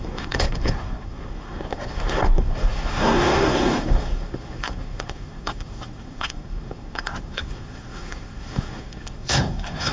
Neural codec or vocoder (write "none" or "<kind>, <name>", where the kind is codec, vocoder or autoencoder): codec, SNAC